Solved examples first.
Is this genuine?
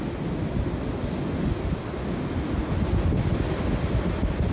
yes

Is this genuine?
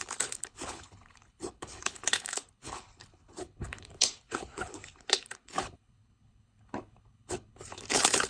no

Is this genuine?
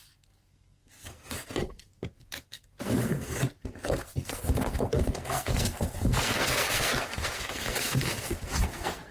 no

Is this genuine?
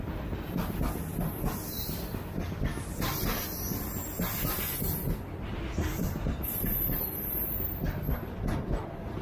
yes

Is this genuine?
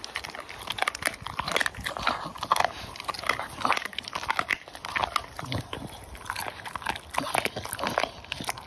yes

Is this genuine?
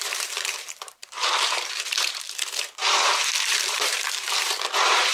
no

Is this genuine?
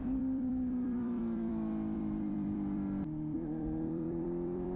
no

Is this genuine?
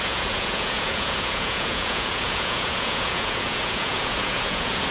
no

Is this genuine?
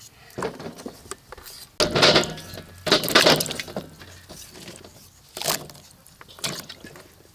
yes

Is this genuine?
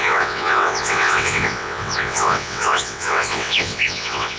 no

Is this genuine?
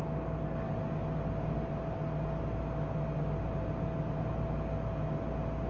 yes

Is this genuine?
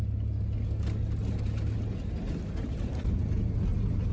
yes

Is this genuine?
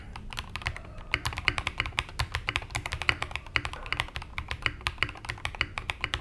yes